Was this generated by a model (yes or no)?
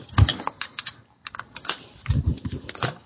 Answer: no